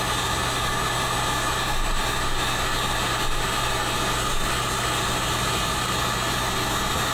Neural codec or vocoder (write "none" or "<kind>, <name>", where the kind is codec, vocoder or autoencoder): none